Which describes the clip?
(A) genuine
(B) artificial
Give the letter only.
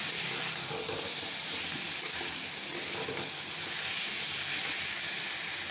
A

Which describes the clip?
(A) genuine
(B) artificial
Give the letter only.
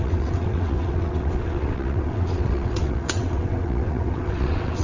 B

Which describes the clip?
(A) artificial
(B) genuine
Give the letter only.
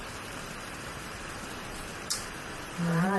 A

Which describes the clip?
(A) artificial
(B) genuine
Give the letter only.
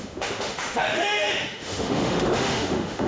A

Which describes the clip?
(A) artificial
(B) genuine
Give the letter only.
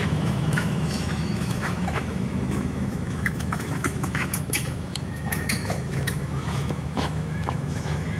A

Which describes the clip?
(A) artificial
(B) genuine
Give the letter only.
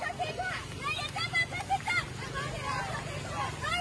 B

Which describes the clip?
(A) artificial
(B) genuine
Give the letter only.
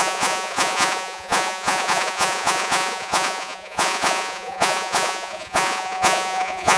A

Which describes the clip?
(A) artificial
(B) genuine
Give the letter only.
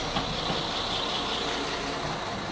B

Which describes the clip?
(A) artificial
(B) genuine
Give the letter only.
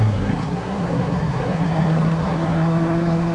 A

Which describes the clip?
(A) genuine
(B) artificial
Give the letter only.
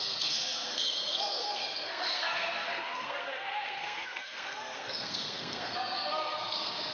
B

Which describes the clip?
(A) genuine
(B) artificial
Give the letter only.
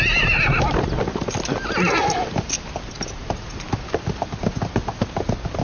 A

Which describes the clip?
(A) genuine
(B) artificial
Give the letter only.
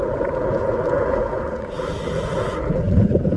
B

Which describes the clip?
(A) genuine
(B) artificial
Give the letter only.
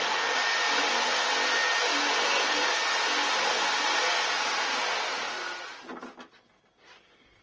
A